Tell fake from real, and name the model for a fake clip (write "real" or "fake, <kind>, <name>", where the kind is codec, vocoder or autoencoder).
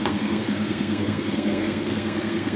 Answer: fake, codec, SNAC